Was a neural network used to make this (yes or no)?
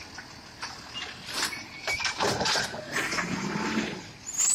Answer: no